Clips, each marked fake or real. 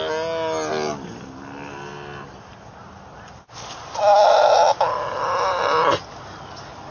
real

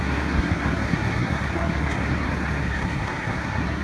fake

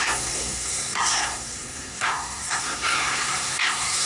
fake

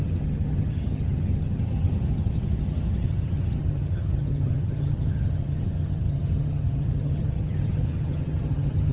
fake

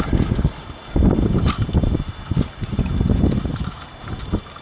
real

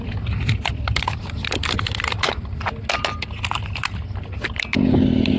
real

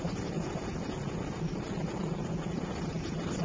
real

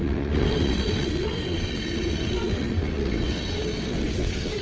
fake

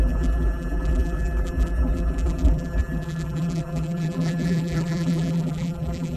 fake